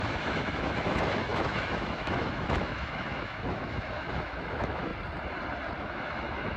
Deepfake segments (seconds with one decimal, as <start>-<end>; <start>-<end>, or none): 0.0-4.9; 5.8-6.6